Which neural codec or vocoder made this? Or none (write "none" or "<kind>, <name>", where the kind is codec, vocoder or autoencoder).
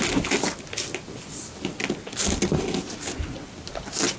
none